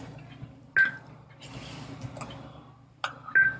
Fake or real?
real